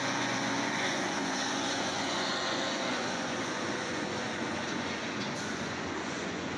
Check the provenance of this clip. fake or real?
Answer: fake